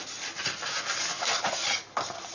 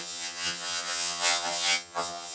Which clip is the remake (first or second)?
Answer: second